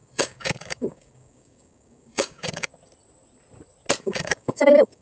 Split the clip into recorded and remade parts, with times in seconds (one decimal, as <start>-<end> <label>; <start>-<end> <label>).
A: 0.0-2.7 remade; 2.7-4.0 recorded; 4.0-5.0 remade